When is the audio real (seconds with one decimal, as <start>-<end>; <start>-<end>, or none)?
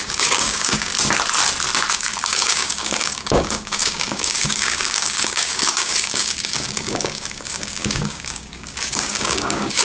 0.9-1.9